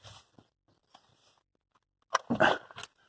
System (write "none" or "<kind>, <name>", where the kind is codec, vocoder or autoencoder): none